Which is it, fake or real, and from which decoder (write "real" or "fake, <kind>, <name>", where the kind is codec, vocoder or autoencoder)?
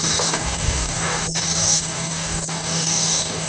fake, codec, DAC